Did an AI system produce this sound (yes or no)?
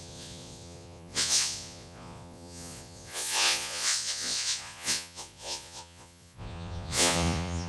yes